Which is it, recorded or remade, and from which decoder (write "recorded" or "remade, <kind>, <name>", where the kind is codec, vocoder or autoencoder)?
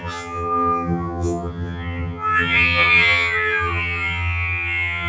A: remade, vocoder, HiFi-GAN